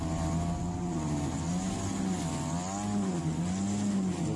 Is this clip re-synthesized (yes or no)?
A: no